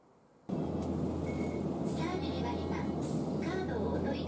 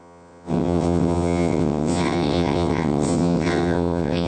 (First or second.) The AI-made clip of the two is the second